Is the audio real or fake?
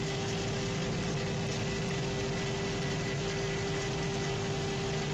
real